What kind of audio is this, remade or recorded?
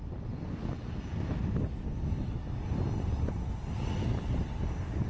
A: recorded